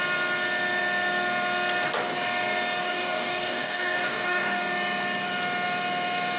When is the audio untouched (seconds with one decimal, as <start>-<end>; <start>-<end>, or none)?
0.0-2.8; 4.6-6.4